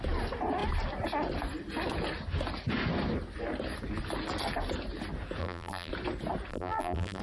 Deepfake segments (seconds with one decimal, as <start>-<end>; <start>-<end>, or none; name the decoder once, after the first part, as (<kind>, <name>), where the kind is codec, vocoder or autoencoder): 5.4-5.9 (vocoder, BigVGAN v2); 6.5-7.2